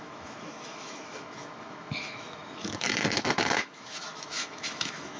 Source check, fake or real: fake